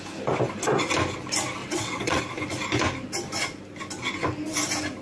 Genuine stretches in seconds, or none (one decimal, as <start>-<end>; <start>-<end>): 0.0-1.6; 2.2-5.0